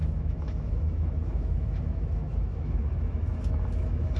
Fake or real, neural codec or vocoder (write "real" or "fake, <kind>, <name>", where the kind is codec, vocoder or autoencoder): fake, autoencoder, DAC-VAE